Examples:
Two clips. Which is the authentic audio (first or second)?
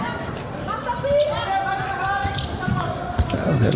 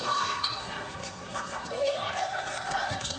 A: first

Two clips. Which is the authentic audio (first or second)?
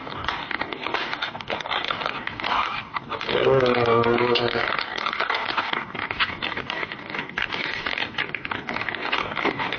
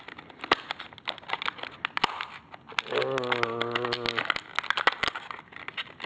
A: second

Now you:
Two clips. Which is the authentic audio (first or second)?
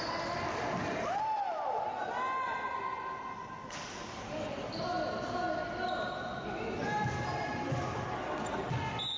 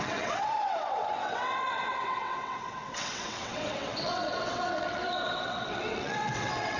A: first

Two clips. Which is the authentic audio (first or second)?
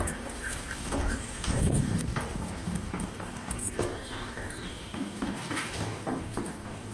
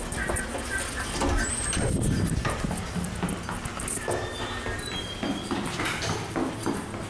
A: second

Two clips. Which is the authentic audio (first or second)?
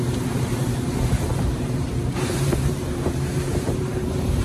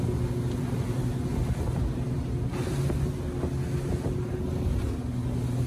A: second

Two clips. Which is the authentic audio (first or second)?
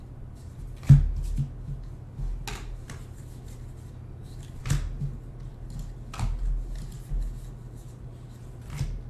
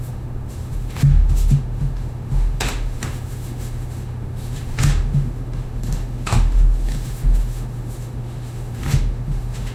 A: first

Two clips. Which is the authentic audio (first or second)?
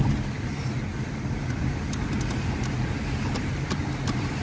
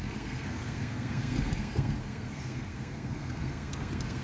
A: first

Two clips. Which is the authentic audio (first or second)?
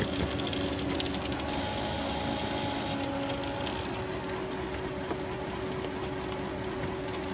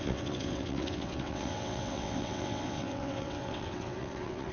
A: first